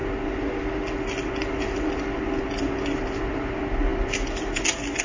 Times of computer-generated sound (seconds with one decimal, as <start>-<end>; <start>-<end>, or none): none